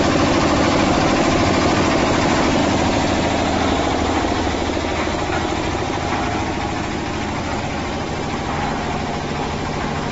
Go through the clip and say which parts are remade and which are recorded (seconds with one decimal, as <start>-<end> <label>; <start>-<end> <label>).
0.0-10.1 recorded